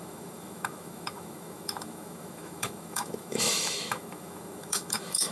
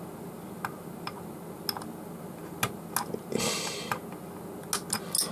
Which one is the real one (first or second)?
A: second